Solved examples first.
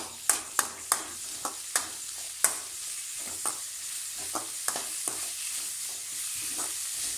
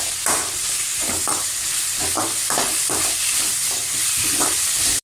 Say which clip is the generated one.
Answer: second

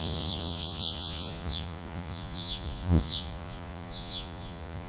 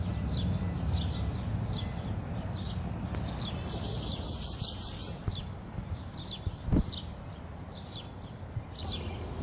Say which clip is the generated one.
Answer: first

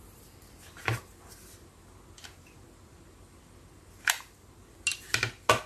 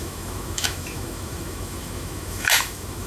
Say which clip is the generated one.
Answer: second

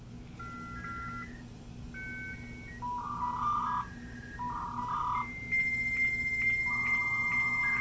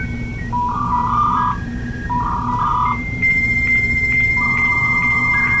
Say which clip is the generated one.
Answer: second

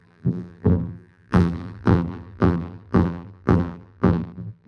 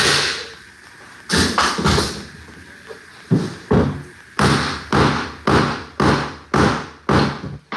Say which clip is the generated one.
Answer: first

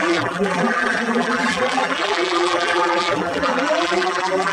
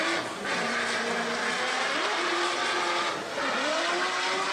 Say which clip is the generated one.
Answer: first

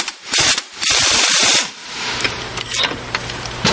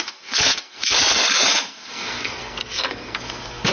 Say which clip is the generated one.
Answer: second